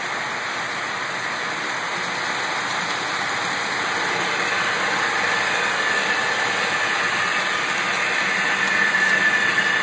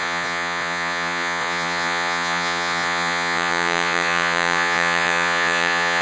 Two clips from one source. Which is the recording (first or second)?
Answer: first